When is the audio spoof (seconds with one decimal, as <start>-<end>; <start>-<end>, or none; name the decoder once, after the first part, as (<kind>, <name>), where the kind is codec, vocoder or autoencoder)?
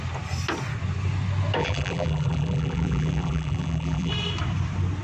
1.6-4.1 (vocoder, BigVGAN v2)